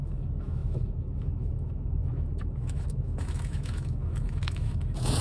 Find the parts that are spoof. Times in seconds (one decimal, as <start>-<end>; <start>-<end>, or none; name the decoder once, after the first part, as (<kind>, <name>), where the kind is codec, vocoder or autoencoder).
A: 0.0-5.2 (autoencoder, DAC-VAE)